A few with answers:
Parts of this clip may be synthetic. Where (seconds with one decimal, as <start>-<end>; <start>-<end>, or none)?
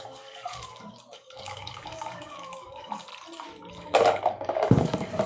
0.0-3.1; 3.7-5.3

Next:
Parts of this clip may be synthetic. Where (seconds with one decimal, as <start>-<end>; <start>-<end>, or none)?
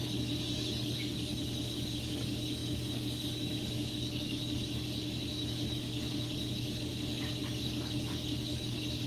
0.0-9.1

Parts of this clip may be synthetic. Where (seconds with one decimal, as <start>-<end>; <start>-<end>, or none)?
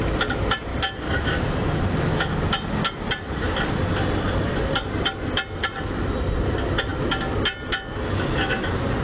none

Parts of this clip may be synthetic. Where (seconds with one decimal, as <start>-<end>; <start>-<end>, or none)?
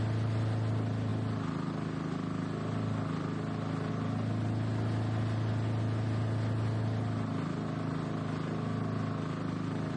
none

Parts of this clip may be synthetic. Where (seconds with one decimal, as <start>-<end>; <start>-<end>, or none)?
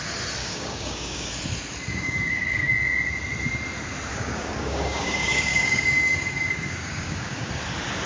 0.4-1.3; 1.9-2.7; 4.1-7.5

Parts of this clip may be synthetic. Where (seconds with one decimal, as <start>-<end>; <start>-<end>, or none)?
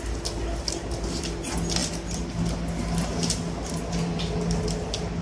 none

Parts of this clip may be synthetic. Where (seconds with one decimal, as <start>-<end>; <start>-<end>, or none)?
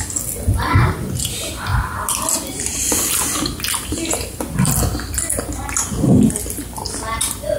none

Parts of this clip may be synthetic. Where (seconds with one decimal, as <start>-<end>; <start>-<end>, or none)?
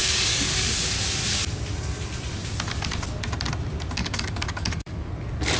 0.0-0.9; 4.0-5.1